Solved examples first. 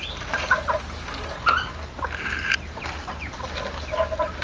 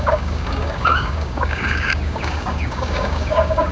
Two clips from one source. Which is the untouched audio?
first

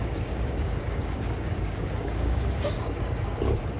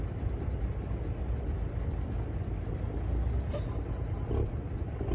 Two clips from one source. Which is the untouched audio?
second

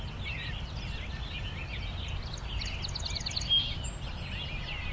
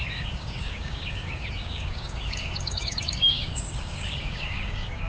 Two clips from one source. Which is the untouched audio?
first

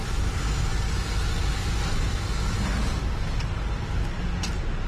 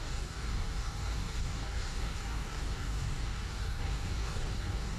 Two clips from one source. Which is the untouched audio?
first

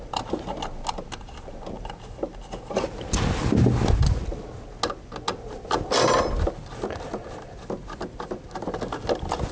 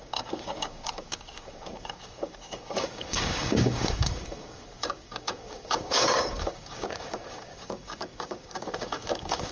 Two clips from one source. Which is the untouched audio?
first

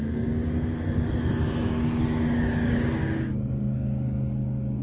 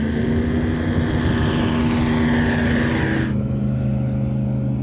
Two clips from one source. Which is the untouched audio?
second